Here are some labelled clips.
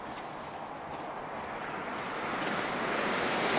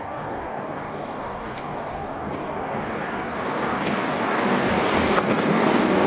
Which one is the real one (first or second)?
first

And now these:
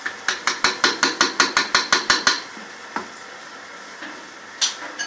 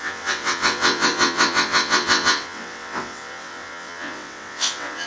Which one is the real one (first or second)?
first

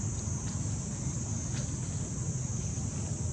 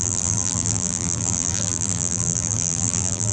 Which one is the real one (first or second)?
first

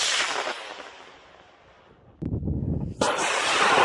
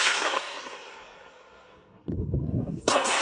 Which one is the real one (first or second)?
first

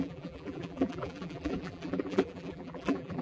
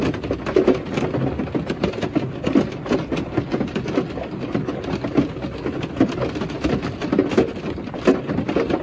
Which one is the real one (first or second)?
second